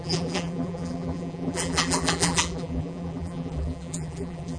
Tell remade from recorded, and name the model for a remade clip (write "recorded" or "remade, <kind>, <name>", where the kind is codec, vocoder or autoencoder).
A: remade, vocoder, BigVGAN v2